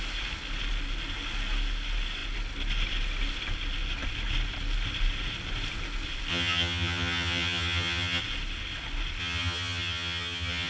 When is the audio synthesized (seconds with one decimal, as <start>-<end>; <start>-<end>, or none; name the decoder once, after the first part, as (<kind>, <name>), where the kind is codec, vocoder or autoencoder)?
6.3-8.2 (vocoder, HiFi-GAN); 9.2-10.7